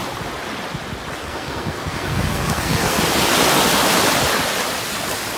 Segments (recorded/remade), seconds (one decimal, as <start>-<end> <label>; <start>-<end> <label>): 0.0-1.2 recorded; 1.2-3.0 remade; 3.0-5.4 recorded